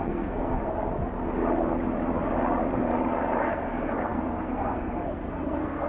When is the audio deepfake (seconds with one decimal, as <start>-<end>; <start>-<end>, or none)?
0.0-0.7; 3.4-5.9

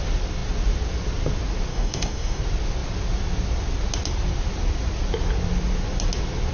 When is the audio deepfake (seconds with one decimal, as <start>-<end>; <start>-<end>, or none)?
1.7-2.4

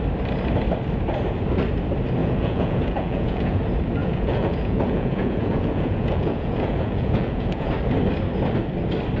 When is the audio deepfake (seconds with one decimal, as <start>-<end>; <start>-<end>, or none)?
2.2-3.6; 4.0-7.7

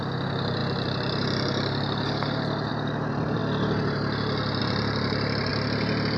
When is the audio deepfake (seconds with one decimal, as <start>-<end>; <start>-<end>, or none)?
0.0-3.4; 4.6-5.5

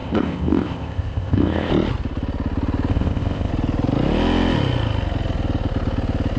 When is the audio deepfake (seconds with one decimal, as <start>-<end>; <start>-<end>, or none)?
0.0-1.7; 2.9-3.5

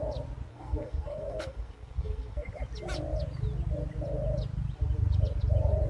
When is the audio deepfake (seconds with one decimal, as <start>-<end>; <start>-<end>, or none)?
0.5-2.5